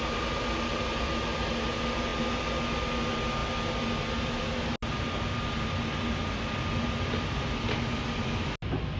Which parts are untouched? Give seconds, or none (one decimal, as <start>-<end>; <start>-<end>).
0.0-9.0